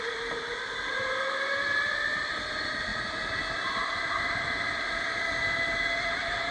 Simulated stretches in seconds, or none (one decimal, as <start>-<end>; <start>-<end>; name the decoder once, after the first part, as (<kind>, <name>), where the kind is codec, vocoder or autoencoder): none